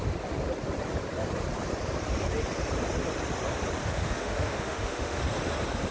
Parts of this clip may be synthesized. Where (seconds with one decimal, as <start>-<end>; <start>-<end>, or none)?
3.8-5.2